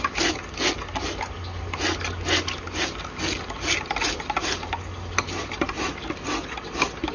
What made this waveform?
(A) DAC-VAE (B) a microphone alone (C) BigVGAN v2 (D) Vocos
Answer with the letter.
B